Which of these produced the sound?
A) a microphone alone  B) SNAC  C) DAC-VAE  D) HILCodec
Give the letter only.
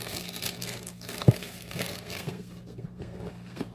B